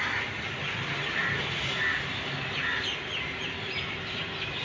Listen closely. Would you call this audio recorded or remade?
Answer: recorded